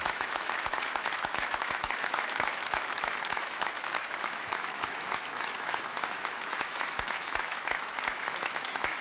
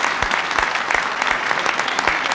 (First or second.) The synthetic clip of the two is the first